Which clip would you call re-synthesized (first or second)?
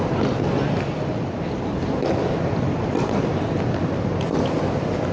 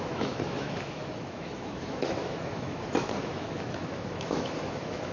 second